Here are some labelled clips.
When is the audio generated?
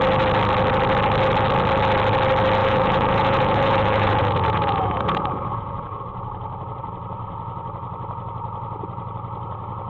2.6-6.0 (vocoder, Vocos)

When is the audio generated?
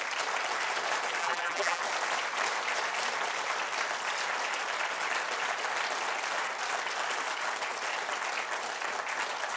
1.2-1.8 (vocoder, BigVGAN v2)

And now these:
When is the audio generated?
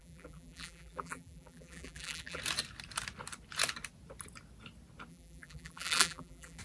0.0-2.4 (vocoder, BigVGAN v2); 5.1-6.6